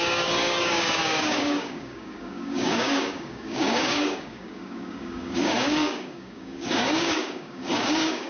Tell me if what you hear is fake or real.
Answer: fake